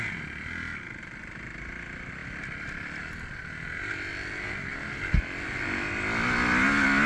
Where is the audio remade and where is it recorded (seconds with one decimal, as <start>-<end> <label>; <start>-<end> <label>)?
0.0-7.1 recorded